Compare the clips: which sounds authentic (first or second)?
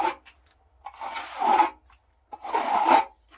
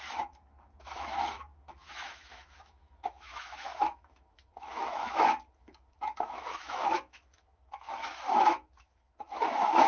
first